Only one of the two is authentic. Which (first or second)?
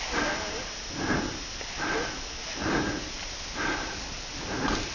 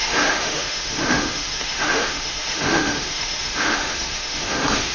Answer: first